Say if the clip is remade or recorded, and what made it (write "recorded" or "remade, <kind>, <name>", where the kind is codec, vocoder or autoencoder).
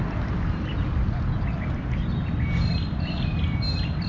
recorded